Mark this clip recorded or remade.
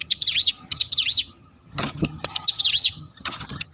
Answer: remade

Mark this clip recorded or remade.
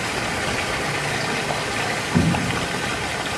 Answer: recorded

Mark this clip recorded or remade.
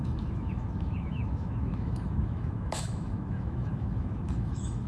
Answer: remade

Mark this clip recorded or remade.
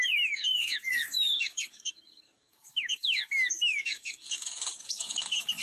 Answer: remade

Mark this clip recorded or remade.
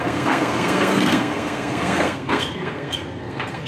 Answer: remade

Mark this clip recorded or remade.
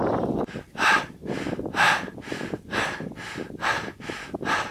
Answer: recorded